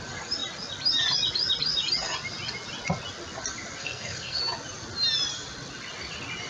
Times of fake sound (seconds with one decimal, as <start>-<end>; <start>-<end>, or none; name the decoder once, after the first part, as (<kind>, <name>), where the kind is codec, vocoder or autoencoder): 3.8-4.4 (codec, SNAC)